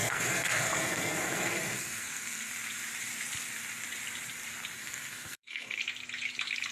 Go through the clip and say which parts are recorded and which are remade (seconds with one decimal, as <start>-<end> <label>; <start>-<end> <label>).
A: 0.0-2.5 remade; 2.5-4.8 recorded; 4.8-5.8 remade; 5.8-6.7 recorded